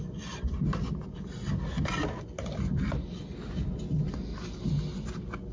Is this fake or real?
real